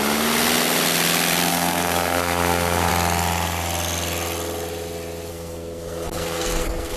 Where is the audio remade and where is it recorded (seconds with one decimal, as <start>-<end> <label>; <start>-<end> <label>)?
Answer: 0.0-1.5 recorded; 1.5-2.9 remade; 2.9-5.3 recorded; 5.3-7.0 remade